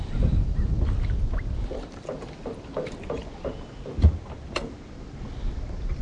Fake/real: real